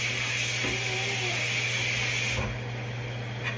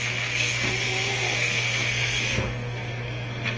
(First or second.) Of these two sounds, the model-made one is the second